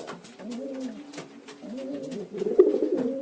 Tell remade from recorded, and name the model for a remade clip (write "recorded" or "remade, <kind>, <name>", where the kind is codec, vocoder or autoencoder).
recorded